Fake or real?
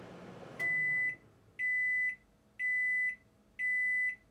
real